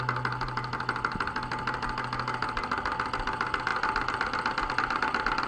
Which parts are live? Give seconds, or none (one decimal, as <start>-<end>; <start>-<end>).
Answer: 0.0-5.5